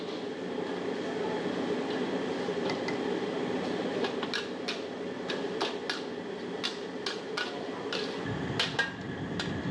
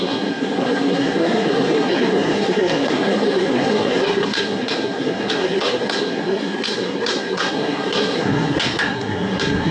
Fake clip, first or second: second